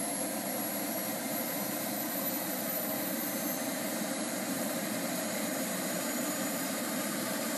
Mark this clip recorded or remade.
remade